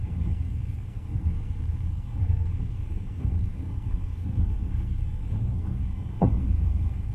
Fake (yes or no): yes